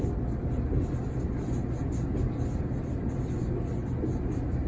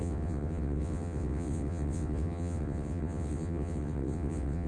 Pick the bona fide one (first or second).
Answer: first